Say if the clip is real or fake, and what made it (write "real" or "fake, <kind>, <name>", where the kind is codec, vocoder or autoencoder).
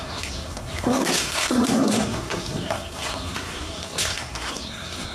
fake, codec, SNAC